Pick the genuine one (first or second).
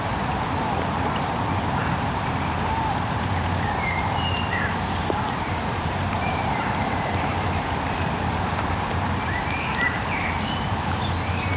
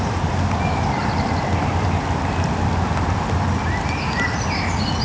second